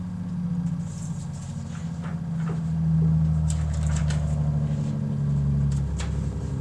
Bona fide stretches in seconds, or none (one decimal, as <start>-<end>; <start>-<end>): 0.0-6.6

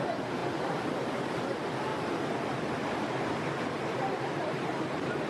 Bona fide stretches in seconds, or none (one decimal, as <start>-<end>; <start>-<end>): 0.0-5.3

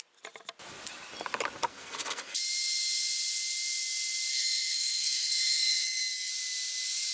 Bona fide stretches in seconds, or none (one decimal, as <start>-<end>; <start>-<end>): 0.0-1.7; 2.4-4.3; 6.3-7.1

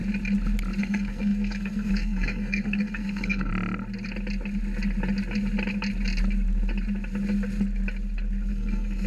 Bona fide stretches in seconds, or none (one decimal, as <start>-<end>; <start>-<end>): 0.0-0.8; 3.5-8.5